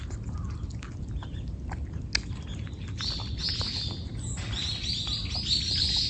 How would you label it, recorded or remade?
recorded